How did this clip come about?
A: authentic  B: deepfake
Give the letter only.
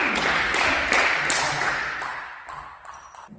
A